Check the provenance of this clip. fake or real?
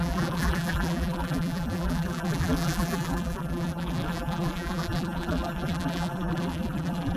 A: fake